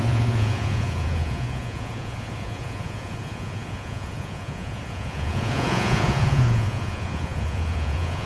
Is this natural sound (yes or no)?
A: no